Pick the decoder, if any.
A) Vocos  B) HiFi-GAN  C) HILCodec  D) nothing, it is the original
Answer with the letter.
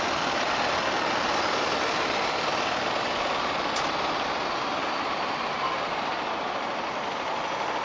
D